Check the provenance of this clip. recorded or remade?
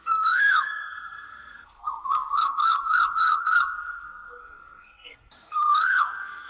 remade